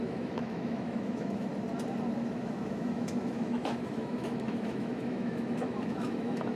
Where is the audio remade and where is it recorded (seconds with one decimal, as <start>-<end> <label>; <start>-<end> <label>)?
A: 0.0-1.5 remade; 1.5-2.2 recorded; 2.2-6.6 remade